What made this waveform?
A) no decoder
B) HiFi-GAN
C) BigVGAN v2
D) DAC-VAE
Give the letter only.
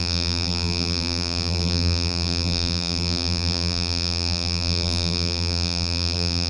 C